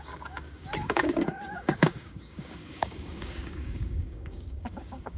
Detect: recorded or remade remade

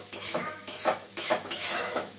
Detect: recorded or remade remade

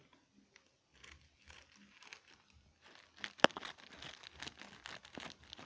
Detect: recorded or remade recorded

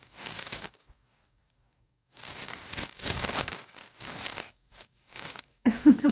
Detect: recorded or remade remade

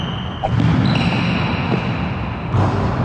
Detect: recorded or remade recorded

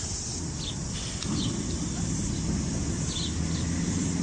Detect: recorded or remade recorded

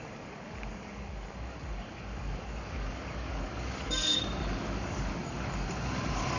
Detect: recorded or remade remade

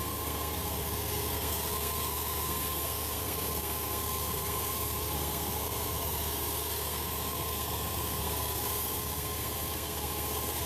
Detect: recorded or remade remade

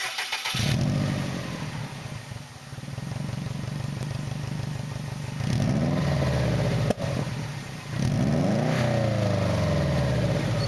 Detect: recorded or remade recorded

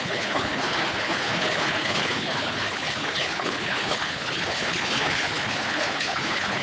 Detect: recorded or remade remade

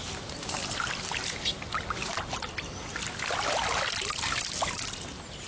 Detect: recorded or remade recorded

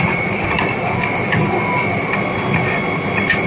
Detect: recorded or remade recorded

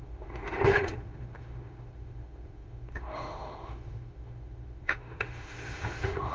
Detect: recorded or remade remade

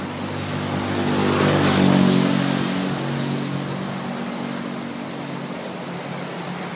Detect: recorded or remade recorded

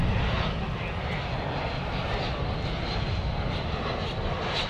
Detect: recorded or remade recorded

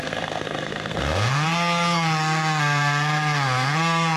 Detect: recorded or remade remade